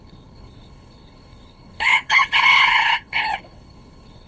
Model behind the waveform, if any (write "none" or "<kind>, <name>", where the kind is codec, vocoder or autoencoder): codec, HILCodec